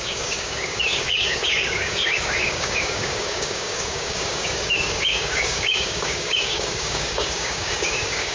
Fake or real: fake